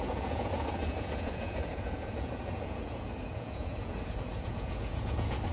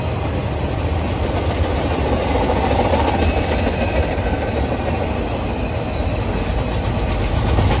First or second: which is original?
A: second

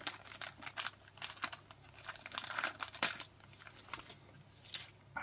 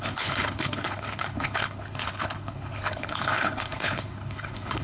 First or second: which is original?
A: first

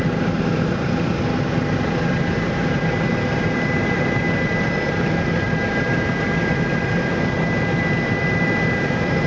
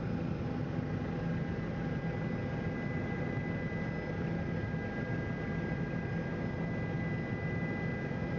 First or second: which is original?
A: second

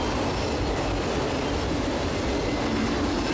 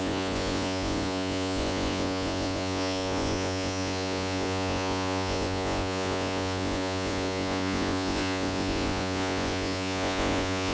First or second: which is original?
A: first